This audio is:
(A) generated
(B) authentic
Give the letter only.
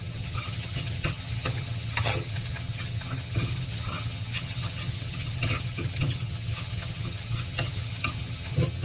A